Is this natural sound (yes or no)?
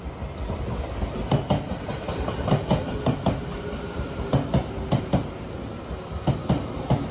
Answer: yes